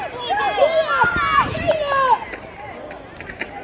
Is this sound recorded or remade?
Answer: recorded